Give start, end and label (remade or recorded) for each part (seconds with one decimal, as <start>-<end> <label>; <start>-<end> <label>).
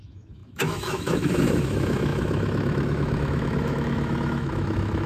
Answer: 0.0-5.1 remade